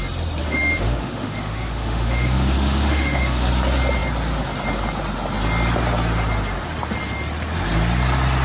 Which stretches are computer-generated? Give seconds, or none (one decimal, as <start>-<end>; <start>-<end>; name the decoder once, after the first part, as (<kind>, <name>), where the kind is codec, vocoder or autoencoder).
0.4-3.5 (autoencoder, DAC-VAE)